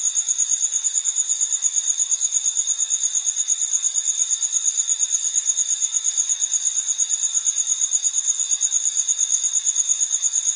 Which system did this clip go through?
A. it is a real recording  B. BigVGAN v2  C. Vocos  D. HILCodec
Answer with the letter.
A